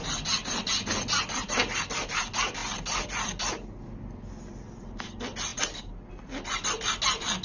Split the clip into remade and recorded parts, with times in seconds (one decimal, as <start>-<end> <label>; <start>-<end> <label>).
0.0-7.4 recorded